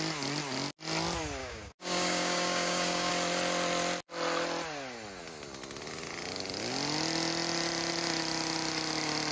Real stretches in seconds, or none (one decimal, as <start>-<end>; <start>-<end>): 0.0-1.4; 3.1-9.3